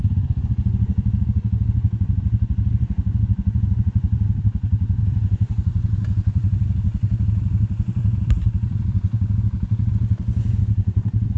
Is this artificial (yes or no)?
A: yes